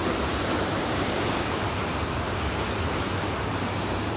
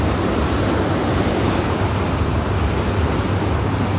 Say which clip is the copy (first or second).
first